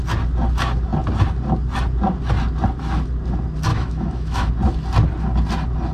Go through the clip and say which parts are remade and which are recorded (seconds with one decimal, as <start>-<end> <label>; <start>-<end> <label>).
0.0-3.7 recorded; 3.7-4.5 remade; 4.5-5.9 recorded